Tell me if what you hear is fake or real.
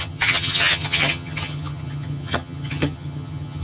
fake